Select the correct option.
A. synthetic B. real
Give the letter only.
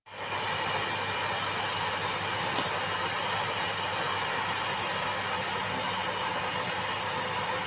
B